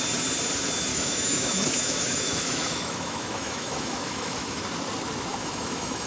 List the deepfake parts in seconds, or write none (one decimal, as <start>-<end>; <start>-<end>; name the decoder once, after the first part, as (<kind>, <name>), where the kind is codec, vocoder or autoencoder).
0.9-4.6 (autoencoder, DAC-VAE); 5.3-6.1